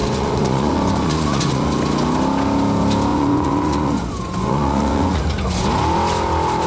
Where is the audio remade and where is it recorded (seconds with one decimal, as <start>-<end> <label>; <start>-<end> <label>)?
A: 0.0-1.6 remade; 1.6-3.1 recorded; 3.1-5.2 remade; 5.2-6.7 recorded